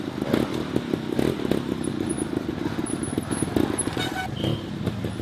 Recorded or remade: recorded